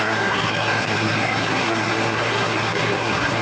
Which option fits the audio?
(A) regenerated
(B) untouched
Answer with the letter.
A